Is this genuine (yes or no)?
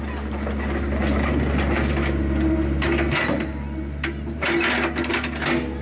yes